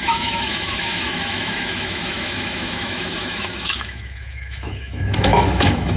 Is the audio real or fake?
fake